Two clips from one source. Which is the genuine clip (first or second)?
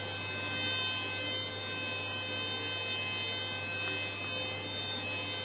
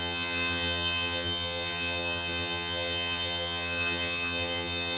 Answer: first